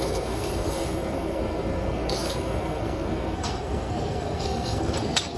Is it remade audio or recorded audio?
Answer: remade